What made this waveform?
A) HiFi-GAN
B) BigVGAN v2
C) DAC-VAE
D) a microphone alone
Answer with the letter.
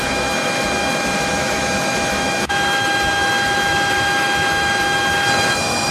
C